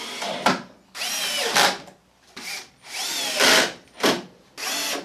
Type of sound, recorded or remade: recorded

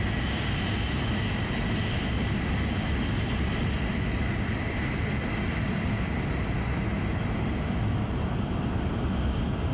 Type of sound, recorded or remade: recorded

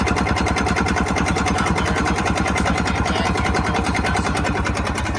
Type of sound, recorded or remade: recorded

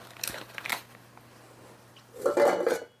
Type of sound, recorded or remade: recorded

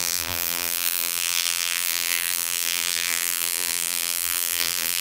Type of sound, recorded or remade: remade